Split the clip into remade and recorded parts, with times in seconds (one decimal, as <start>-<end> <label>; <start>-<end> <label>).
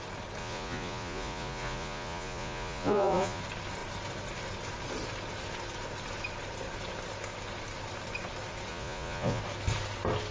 0.0-0.4 recorded; 0.4-3.4 remade; 3.4-8.7 recorded; 8.7-9.4 remade; 9.4-10.3 recorded